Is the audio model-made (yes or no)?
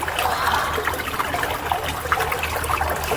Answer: no